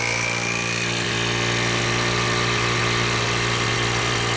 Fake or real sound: real